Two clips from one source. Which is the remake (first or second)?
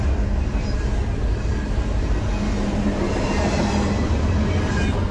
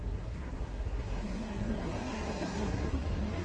second